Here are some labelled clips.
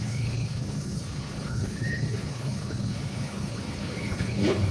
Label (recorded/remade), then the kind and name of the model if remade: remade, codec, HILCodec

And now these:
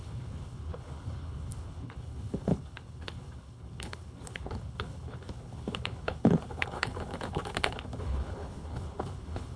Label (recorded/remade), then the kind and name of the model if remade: remade, codec, HILCodec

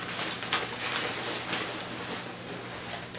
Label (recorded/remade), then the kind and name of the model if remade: recorded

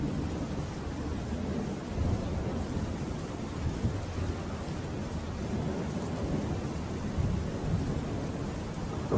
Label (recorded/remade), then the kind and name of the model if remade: recorded